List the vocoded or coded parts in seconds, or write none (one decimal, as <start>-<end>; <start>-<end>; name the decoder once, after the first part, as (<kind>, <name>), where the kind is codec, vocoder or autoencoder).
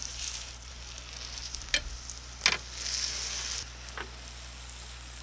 0.0-0.7 (vocoder, BigVGAN v2)